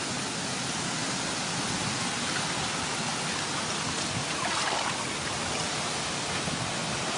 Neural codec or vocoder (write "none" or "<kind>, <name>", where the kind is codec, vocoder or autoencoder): none